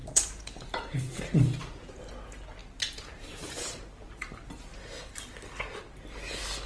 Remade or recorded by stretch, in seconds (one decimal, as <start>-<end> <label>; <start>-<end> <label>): 0.0-2.0 remade; 2.0-2.6 recorded; 2.6-4.6 remade; 4.6-6.7 recorded